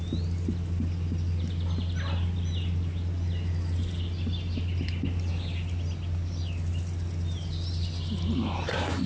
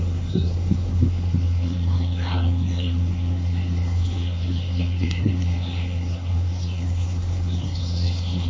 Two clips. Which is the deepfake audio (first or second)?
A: second